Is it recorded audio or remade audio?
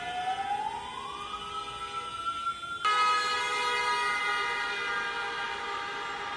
recorded